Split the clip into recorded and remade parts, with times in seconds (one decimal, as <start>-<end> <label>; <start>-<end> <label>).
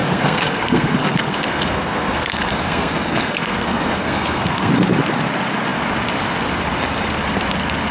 0.0-4.7 remade; 4.7-7.9 recorded